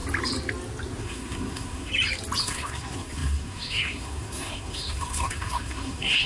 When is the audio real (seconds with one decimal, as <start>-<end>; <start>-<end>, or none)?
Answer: 0.0-1.0; 1.9-2.4